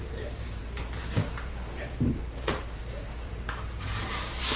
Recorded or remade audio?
remade